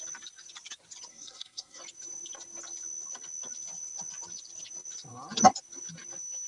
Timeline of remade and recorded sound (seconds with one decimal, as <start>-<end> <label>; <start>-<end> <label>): 0.0-1.1 recorded; 1.1-1.8 remade; 1.8-6.5 recorded